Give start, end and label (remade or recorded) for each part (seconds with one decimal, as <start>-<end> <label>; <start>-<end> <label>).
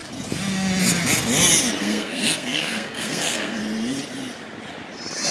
0.0-1.8 recorded; 1.8-3.6 remade; 3.6-5.3 recorded